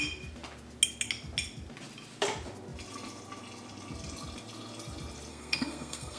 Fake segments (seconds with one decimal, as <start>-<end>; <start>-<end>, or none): 5.3-6.2